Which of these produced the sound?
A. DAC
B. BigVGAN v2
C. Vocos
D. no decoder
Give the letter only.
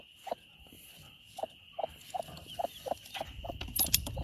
B